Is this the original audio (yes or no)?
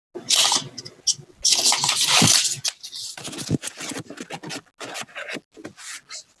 yes